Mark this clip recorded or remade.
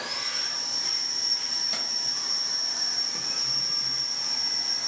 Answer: remade